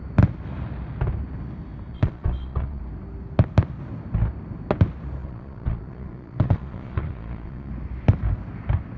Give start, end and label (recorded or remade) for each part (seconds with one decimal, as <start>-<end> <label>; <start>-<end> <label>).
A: 0.0-1.9 recorded; 1.9-2.8 remade; 2.8-5.2 recorded; 5.2-7.7 remade; 7.7-9.0 recorded